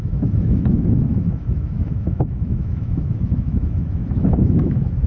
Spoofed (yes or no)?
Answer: yes